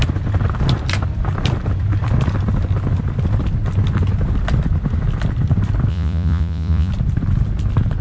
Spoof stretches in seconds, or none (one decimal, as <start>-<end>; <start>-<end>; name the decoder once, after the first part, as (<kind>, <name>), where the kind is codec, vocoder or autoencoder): 5.9-6.9 (vocoder, Vocos)